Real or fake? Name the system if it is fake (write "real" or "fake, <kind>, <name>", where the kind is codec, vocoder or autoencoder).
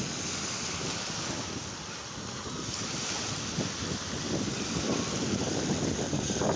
real